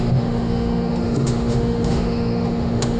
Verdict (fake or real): fake